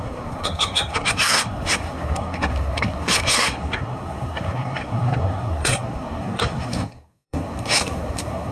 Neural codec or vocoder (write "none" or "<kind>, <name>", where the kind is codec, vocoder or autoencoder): codec, SNAC